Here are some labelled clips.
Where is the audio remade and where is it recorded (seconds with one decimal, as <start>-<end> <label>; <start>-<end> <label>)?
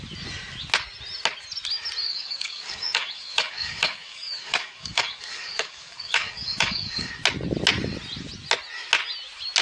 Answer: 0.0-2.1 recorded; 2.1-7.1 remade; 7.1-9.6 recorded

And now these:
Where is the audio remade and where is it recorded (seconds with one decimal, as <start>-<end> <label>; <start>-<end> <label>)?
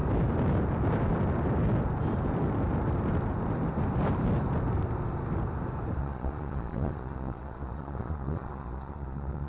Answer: 0.0-6.0 recorded; 6.0-9.5 remade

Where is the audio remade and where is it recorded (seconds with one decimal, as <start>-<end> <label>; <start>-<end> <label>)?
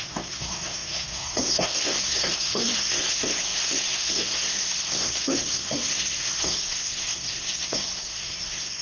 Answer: 0.0-8.8 remade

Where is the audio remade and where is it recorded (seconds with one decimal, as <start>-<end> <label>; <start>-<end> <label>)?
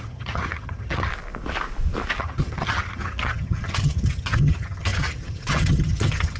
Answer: 0.0-1.1 remade; 1.1-2.2 recorded; 2.2-6.4 remade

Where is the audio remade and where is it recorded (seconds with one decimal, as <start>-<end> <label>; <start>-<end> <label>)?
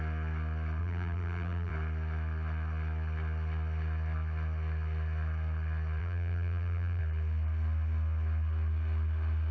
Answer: 0.0-0.8 recorded; 0.8-1.7 remade; 1.7-6.0 recorded; 6.0-7.0 remade; 7.0-9.5 recorded